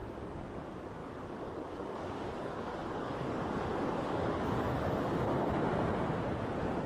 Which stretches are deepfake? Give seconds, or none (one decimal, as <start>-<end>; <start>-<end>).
0.0-5.3